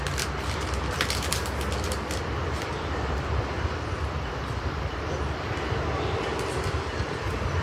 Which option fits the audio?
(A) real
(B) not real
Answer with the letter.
A